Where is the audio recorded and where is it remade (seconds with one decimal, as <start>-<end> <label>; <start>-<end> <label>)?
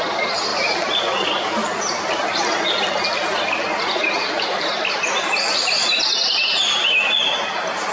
0.0-7.9 recorded